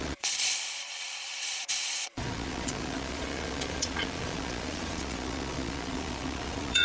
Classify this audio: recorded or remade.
remade